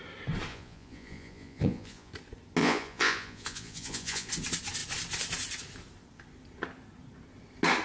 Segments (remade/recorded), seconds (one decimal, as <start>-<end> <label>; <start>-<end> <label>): 0.0-0.5 recorded; 0.5-2.1 remade; 2.1-2.6 recorded; 2.6-4.3 remade; 4.3-7.8 recorded